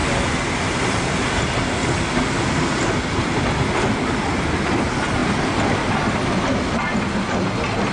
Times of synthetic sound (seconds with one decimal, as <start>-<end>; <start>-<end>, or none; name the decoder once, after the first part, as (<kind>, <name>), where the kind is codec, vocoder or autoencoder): 5.2-5.9 (vocoder, BigVGAN v2)

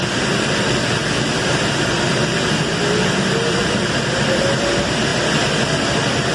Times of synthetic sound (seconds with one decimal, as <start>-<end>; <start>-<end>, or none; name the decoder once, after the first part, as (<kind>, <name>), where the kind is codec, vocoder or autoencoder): 0.0-6.3 (vocoder, BigVGAN v2)

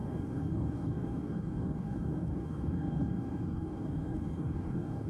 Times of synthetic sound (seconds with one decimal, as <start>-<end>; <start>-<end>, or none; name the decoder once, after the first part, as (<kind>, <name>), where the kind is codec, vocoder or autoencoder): 0.0-5.1 (codec, DAC)